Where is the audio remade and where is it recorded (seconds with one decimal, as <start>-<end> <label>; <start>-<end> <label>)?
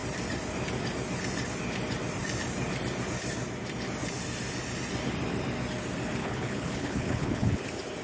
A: 0.0-6.2 recorded; 6.2-7.6 remade; 7.6-8.0 recorded